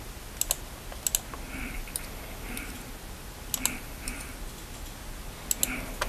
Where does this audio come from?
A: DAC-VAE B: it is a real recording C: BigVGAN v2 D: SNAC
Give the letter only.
B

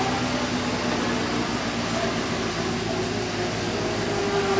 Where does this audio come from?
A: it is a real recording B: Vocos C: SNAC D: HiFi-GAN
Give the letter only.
A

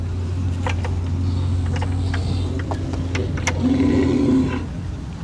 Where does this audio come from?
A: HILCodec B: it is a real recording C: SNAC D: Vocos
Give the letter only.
B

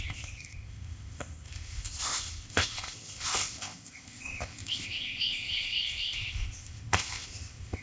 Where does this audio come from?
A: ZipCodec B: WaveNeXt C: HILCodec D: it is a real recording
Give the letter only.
A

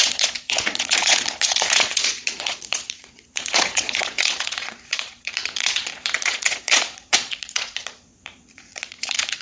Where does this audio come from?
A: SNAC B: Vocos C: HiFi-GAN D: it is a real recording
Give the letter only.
B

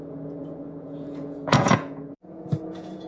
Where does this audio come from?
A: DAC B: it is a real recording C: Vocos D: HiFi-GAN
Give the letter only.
C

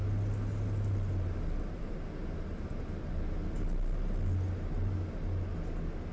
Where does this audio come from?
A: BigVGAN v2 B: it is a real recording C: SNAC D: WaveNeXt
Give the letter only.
B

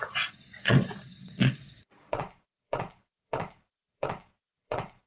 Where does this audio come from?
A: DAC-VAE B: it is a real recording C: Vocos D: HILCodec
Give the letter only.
C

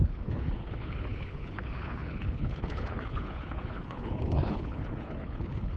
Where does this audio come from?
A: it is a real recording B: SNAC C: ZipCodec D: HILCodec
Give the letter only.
D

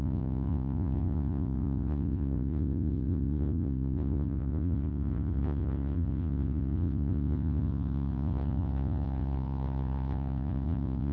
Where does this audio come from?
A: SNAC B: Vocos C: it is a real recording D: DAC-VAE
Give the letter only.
B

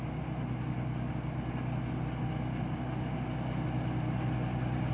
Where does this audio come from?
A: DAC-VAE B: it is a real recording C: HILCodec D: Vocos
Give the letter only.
B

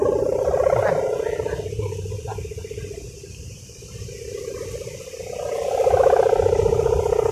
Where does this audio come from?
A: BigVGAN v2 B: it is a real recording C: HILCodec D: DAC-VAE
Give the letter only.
B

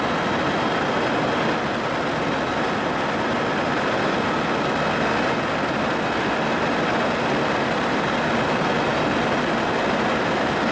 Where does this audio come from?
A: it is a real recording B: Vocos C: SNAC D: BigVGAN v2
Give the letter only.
A